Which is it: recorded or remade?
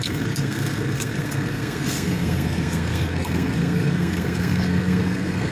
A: remade